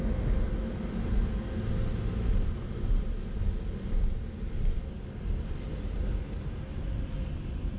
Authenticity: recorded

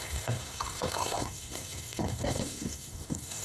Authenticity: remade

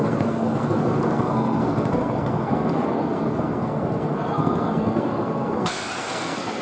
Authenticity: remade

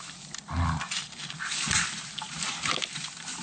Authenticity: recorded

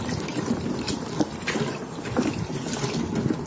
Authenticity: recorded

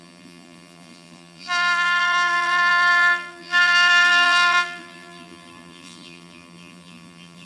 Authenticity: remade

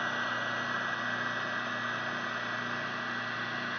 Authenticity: recorded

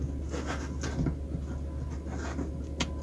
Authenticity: recorded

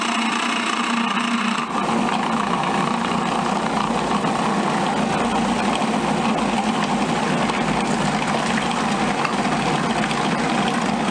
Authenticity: recorded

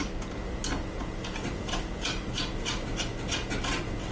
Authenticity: recorded